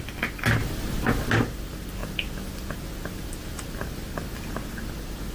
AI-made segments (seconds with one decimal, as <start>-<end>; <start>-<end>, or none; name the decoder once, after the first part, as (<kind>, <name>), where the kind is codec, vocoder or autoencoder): none